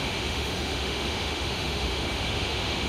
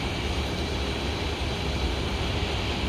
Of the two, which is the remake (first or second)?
first